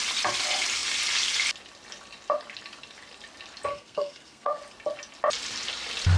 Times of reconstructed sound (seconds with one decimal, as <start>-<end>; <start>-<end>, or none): 3.7-4.6

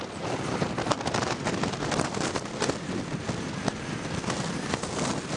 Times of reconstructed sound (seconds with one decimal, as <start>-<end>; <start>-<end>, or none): 0.0-3.2

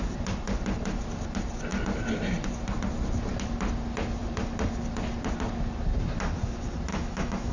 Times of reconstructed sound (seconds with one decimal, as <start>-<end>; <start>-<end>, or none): 6.9-7.5

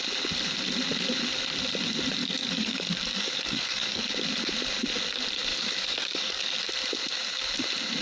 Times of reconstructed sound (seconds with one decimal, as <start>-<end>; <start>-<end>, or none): 2.2-4.1; 5.5-6.7